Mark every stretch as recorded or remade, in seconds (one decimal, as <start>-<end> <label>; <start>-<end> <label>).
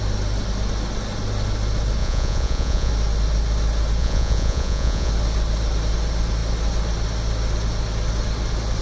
0.0-2.0 recorded; 2.0-2.9 remade; 2.9-4.0 recorded; 4.0-5.1 remade; 5.1-8.8 recorded